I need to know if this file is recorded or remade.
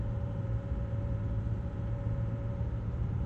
remade